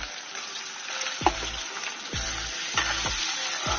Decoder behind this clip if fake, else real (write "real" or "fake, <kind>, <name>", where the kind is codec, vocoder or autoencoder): real